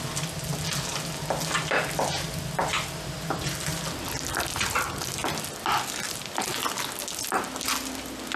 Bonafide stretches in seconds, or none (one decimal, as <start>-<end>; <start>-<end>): 0.0-8.4